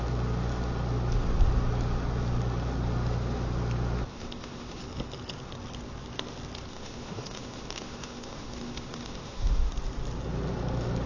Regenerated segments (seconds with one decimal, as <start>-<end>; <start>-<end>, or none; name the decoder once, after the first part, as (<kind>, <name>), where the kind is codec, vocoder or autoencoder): 4.1-4.8 (autoencoder, DAC-VAE); 6.7-9.7